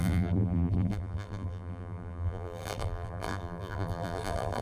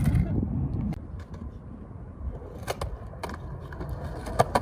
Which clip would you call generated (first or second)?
first